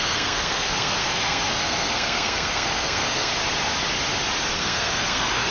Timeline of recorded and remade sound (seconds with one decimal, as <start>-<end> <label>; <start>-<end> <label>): 0.0-3.3 remade; 3.3-4.5 recorded; 4.5-5.5 remade